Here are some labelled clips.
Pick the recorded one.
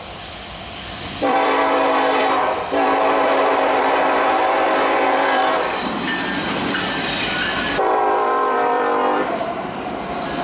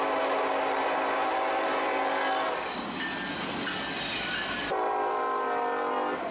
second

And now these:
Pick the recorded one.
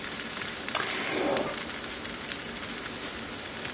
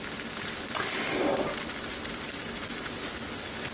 second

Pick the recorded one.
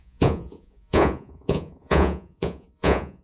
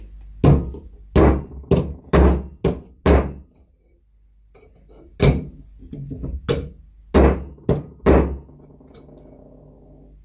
second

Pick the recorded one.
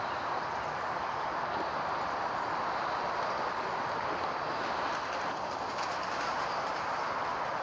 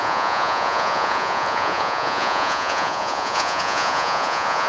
first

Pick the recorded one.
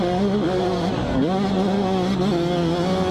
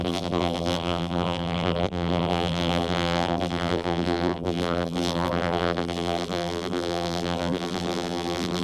first